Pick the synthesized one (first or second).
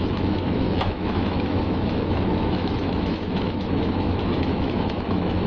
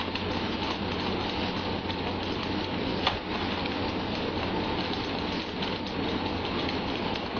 first